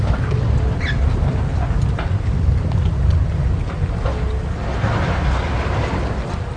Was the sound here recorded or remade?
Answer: recorded